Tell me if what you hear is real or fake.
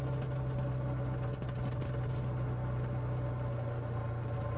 real